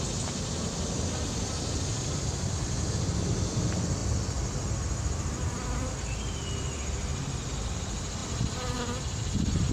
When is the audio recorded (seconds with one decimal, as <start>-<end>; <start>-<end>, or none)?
0.0-9.7